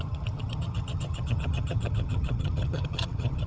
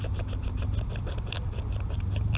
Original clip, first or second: second